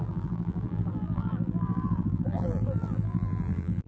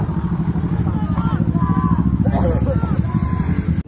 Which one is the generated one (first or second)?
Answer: first